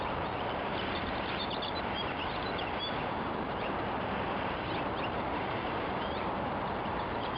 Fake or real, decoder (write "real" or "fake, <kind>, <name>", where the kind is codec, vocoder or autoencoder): fake, vocoder, BigVGAN v2